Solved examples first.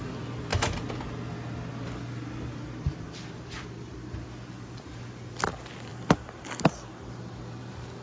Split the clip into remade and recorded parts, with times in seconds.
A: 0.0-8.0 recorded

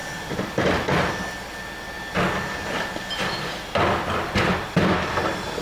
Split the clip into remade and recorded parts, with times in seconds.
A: 0.0-5.6 recorded